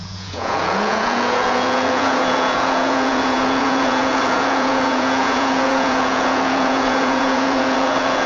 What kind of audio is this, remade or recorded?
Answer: remade